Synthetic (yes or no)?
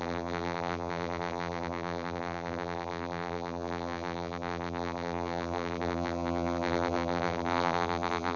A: yes